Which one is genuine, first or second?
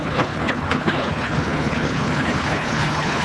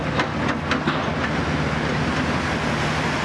second